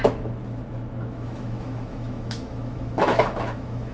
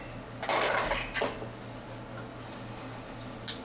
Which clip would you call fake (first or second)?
first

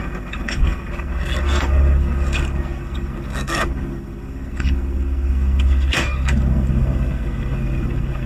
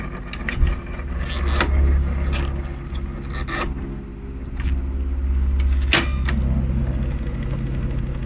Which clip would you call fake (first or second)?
first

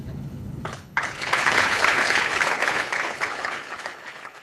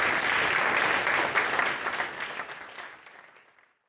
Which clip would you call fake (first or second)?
first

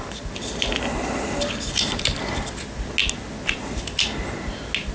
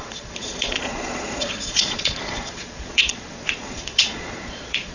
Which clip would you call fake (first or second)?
second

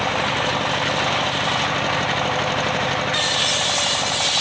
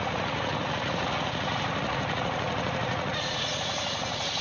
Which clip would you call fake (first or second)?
second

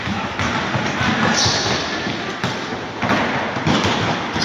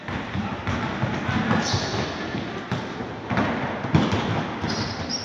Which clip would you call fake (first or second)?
first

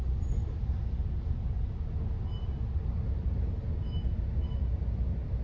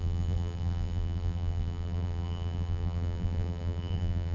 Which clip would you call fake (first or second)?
second